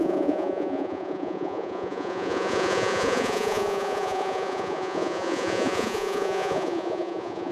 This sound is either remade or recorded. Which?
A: remade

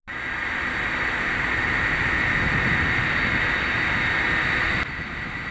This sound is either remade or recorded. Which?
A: recorded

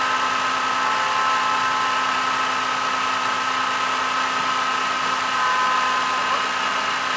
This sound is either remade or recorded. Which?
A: recorded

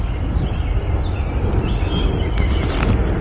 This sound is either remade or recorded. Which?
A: recorded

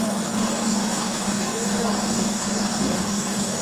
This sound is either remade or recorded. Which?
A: remade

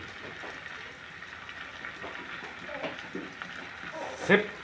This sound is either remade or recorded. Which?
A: recorded